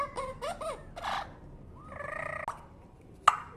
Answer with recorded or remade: recorded